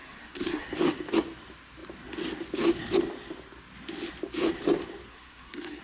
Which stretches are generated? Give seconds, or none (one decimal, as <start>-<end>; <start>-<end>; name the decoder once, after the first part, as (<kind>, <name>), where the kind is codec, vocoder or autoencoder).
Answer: 0.0-0.7 (codec, SNAC); 5.1-5.8